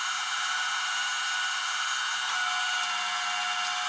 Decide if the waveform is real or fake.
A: real